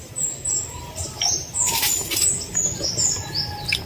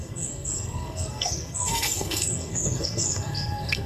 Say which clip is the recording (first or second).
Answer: first